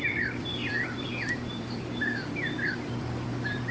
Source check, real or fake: fake